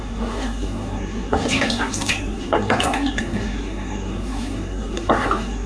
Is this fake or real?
fake